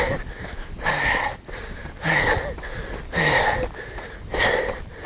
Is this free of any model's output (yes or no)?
yes